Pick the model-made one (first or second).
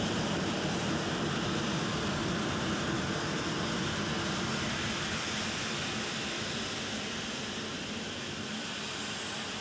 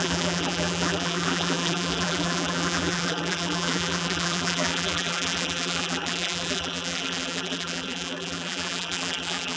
second